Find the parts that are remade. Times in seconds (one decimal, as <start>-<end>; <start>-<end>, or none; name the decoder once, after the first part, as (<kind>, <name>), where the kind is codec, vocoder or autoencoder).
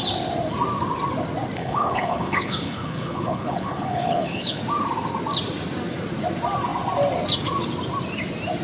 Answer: 1.6-4.6 (codec, HILCodec)